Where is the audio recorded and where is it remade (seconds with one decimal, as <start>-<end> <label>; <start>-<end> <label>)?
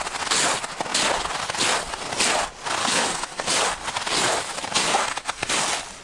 0.0-2.8 recorded; 2.8-3.5 remade; 3.5-4.8 recorded; 4.8-5.5 remade; 5.5-6.0 recorded